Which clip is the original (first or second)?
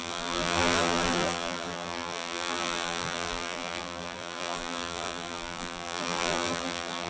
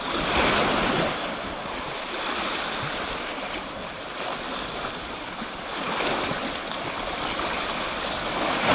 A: second